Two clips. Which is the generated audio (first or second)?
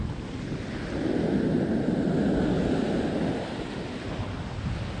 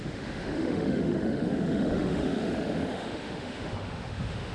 second